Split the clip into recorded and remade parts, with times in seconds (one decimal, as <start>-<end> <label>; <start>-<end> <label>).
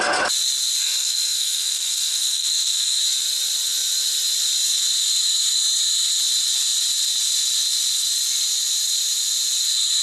0.0-0.8 recorded; 0.8-3.0 remade; 3.0-10.0 recorded